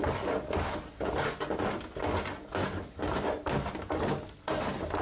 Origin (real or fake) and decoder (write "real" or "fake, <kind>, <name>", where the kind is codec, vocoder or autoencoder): real